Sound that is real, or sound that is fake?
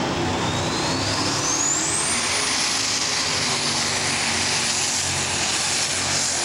real